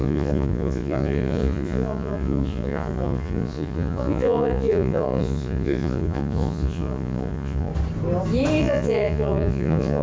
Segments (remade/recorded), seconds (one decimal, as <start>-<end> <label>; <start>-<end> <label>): 0.0-7.7 remade; 7.7-8.6 recorded; 8.6-10.0 remade